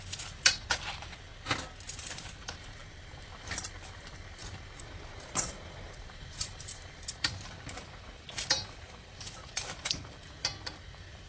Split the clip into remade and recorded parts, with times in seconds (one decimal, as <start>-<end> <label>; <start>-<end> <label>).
0.0-1.3 remade; 1.3-2.4 recorded; 2.4-11.3 remade